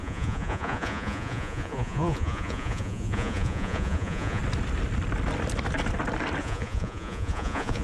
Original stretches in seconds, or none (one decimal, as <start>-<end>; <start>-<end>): 4.4-6.4

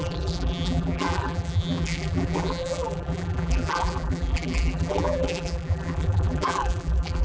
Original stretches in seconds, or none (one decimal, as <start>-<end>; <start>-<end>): none